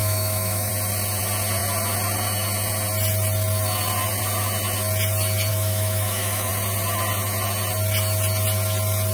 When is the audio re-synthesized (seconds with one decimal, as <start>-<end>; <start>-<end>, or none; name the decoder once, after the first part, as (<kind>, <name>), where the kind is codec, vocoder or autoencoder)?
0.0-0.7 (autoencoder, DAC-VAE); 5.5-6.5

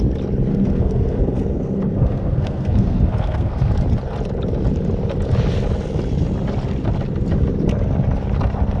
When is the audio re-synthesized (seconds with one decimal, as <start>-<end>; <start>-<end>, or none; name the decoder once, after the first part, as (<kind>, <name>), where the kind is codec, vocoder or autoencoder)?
0.5-3.7 (codec, SNAC)

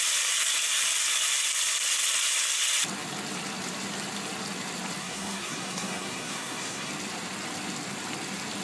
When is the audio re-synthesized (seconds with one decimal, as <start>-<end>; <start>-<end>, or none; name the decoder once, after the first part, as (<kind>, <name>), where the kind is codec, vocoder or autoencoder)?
5.0-6.9 (codec, SNAC)

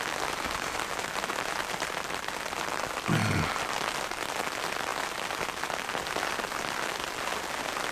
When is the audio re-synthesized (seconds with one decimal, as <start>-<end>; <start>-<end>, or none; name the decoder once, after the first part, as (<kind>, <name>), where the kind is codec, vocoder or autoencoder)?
none

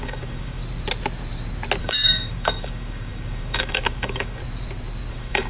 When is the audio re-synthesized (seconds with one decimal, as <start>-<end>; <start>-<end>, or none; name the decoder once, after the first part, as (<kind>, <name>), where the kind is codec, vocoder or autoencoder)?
0.0-0.6 (codec, DAC); 1.8-4.4; 5.1-5.5

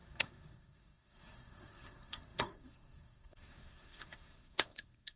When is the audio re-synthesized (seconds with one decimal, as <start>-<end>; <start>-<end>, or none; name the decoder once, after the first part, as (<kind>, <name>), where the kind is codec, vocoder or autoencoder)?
0.0-5.2 (codec, SNAC)

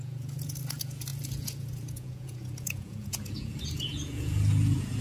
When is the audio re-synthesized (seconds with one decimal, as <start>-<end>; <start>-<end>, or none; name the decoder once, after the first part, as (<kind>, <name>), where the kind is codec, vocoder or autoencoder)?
0.0-5.0 (vocoder, Vocos)